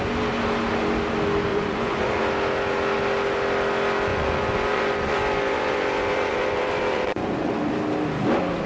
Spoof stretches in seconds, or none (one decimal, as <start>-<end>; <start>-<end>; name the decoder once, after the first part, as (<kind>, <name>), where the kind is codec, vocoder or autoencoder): 1.5-2.2 (vocoder, Vocos); 4.1-7.7